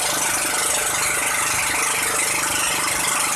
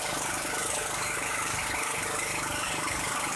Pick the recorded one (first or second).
first